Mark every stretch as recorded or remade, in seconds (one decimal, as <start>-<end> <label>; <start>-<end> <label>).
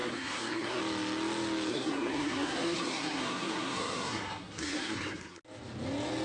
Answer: 0.0-0.8 remade; 0.8-1.7 recorded; 1.7-5.4 remade; 5.4-6.2 recorded